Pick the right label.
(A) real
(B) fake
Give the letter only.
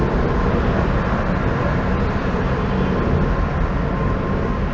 A